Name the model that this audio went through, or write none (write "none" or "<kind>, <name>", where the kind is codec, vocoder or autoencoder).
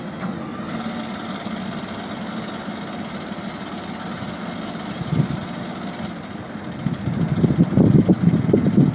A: none